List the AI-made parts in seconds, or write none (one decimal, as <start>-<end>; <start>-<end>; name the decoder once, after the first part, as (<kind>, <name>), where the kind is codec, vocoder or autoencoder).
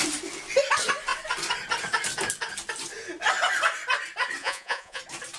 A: 4.4-5.0 (vocoder, Vocos)